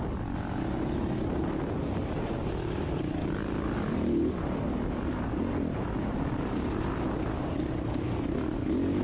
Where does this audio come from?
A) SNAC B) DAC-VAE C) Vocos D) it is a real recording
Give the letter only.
D